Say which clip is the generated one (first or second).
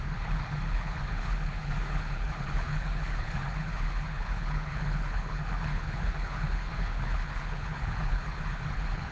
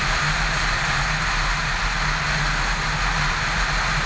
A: first